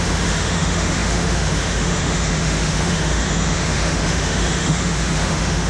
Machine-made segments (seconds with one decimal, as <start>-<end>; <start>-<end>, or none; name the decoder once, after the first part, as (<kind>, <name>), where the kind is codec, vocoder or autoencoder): 0.0-5.7 (autoencoder, DAC-VAE)